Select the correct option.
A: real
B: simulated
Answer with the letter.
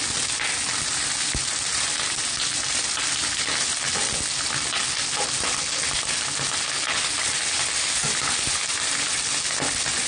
A